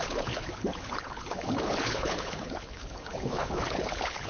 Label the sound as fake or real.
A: fake